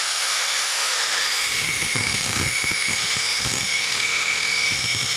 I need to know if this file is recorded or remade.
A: remade